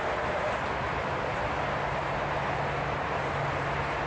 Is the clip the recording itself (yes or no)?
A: yes